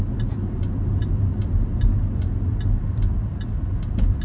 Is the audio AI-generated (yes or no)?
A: no